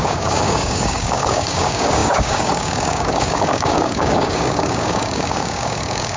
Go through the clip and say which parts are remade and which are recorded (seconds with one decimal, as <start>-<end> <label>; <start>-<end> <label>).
0.0-6.2 remade